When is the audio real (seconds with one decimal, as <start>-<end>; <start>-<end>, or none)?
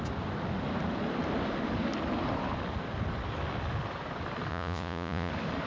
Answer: 0.0-4.5; 5.3-5.7